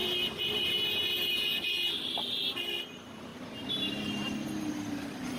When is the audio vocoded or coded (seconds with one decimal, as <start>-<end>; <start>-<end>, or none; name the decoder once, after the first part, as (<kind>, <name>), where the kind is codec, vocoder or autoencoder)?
none